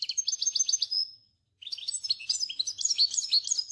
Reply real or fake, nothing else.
real